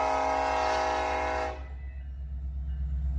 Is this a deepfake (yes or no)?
no